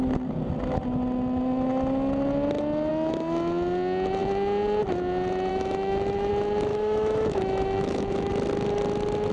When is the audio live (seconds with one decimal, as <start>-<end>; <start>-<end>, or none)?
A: 0.0-5.5; 6.3-6.7; 8.3-9.3